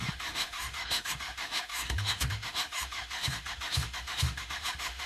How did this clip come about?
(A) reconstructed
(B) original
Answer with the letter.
A